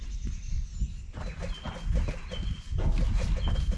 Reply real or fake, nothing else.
real